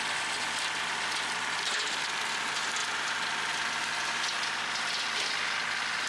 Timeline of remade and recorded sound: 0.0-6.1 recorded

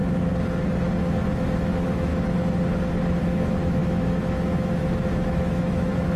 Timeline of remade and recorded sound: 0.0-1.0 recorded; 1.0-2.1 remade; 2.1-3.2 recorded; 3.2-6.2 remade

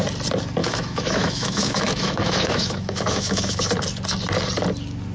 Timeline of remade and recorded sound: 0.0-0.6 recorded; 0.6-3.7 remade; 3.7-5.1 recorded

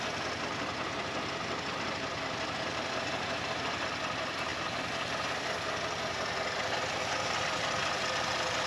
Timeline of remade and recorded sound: 0.0-8.7 recorded

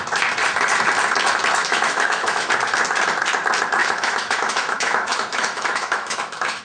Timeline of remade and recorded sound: 0.0-1.6 recorded; 1.6-2.5 remade; 2.5-3.8 recorded; 3.8-6.6 remade